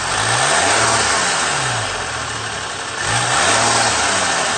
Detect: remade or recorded recorded